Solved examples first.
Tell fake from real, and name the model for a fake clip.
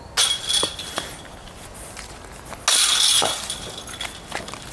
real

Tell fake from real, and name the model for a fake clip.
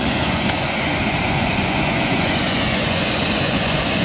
fake, vocoder, Vocos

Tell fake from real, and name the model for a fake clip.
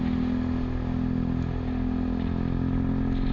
real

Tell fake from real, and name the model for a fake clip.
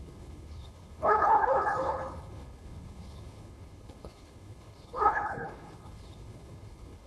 fake, codec, HILCodec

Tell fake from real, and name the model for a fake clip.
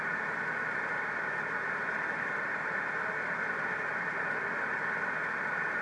real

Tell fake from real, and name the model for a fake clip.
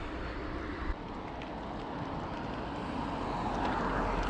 real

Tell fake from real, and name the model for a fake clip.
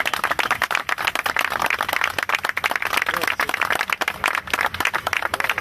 real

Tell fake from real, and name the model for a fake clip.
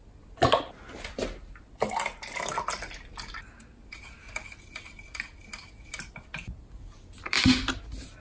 real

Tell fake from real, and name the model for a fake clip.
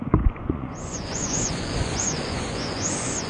fake, vocoder, Vocos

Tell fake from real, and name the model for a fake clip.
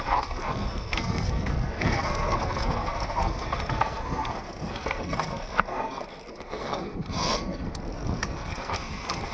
fake, codec, SNAC